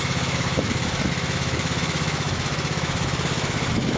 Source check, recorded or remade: remade